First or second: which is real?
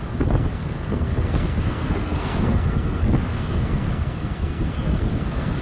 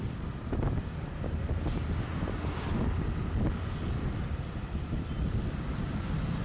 second